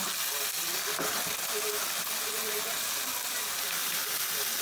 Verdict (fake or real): real